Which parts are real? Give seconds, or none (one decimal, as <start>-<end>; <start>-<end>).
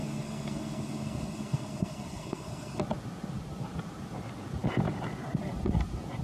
2.8-6.2